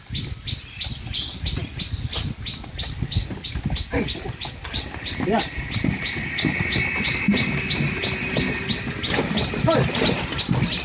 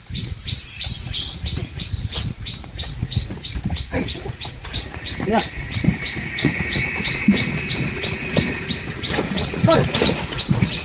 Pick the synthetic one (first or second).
second